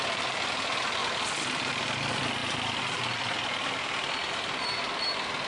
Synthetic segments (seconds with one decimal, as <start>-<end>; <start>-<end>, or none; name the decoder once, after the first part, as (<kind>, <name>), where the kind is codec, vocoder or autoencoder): 0.0-1.0 (vocoder, BigVGAN v2); 1.7-5.5